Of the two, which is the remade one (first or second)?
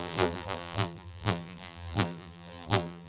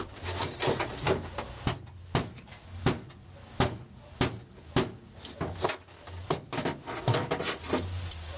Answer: first